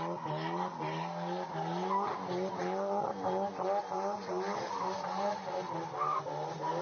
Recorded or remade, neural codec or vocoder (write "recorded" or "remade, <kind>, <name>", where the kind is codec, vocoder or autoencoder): recorded